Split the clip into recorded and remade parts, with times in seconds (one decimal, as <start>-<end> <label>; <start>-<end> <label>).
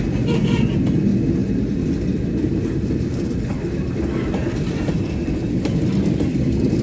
0.0-6.8 recorded